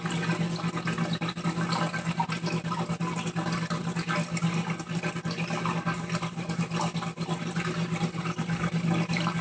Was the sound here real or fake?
real